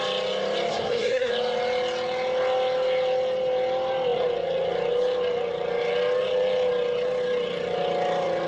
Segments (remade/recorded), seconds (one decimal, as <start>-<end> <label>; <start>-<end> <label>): 0.0-0.7 recorded; 0.7-1.3 remade; 1.3-8.5 recorded